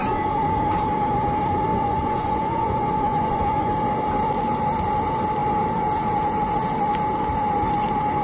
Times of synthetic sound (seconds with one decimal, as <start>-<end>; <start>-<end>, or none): 1.7-3.7

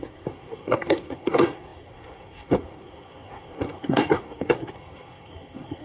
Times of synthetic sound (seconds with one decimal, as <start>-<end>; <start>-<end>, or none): 0.0-5.8

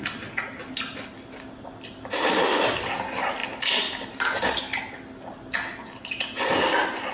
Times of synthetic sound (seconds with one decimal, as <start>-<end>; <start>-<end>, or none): none